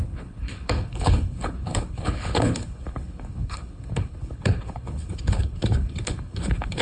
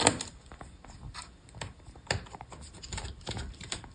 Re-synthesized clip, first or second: first